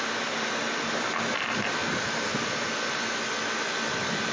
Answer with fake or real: real